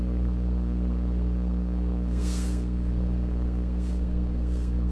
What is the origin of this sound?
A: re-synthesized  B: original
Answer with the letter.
A